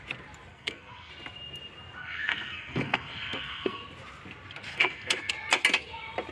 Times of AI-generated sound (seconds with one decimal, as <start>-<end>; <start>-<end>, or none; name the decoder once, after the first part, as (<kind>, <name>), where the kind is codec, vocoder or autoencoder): 0.5-1.1 (codec, SNAC); 2.0-3.8; 4.7-5.3